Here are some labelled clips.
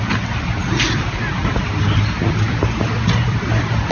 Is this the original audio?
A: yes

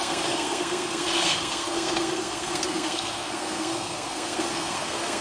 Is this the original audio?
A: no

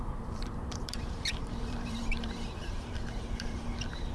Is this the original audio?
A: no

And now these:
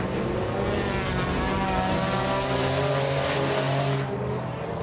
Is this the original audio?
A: yes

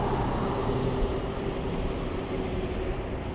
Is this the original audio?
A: yes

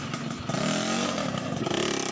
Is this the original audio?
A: yes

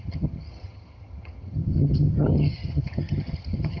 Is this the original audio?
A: no